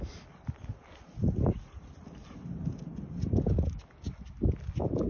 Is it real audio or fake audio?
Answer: real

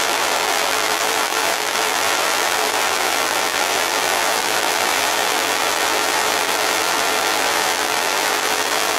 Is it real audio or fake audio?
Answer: fake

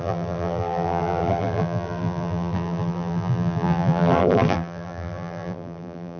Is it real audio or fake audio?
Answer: fake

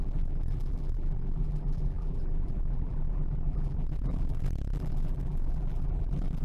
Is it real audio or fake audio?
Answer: fake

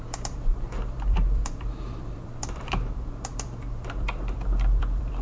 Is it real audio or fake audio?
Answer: fake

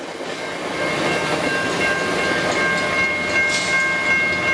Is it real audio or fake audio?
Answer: real